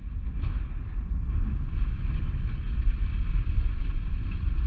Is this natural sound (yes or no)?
yes